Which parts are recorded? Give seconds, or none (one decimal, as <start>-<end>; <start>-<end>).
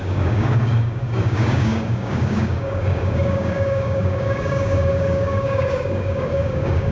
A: none